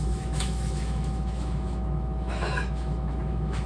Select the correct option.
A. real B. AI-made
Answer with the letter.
B